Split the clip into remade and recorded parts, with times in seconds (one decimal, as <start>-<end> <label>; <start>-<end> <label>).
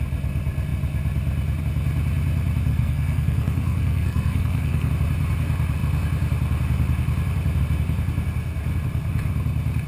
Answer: 0.0-2.7 recorded; 2.7-4.9 remade; 4.9-9.9 recorded